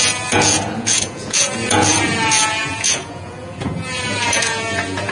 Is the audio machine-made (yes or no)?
yes